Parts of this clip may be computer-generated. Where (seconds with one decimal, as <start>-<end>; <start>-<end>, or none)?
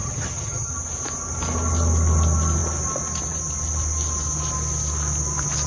0.0-0.7